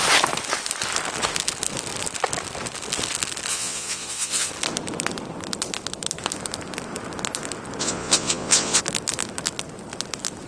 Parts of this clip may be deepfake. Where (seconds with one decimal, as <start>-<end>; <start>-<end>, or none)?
3.5-4.5; 7.8-8.8